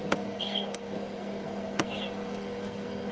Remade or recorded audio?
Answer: remade